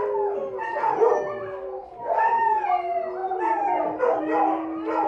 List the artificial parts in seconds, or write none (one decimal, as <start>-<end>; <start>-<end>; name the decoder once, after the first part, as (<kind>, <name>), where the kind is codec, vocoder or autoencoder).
1.8-2.4 (vocoder, BigVGAN v2); 3.2-4.2